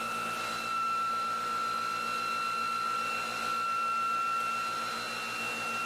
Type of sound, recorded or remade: recorded